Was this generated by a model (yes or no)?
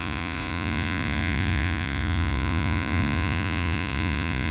yes